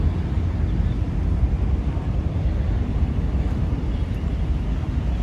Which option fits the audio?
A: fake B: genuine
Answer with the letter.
B